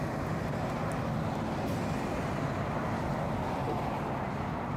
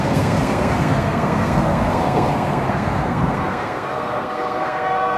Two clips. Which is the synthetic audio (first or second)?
second